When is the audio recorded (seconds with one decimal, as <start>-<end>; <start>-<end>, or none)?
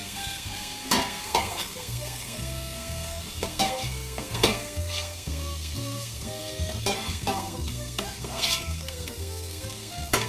none